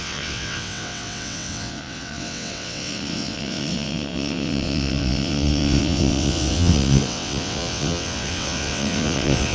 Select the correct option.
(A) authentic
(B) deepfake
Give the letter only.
B